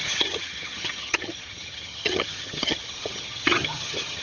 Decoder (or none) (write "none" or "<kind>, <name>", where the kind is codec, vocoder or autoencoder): vocoder, HiFi-GAN